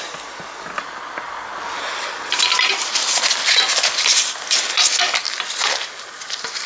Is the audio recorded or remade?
recorded